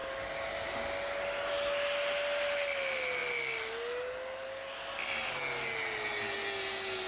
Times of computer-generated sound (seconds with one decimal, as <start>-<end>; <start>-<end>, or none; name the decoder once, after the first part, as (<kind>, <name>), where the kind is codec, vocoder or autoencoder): none